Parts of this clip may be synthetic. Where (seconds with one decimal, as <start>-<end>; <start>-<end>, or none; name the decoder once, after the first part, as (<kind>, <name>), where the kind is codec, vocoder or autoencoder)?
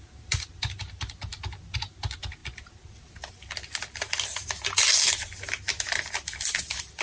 none